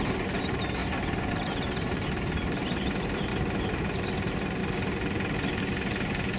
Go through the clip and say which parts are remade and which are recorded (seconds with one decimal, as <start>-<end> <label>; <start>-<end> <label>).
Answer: 0.0-0.8 remade; 0.8-1.3 recorded; 1.3-3.3 remade; 3.3-3.8 recorded; 3.8-4.6 remade; 4.6-6.4 recorded